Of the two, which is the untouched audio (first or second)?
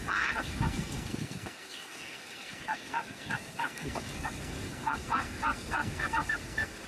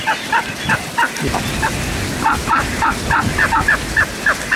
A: second